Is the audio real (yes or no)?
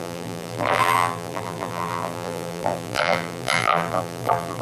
no